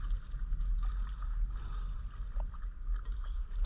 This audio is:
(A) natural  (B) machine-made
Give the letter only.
A